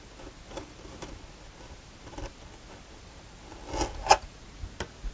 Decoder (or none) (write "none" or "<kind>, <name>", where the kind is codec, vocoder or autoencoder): none